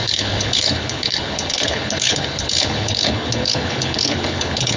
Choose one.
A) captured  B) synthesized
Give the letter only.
B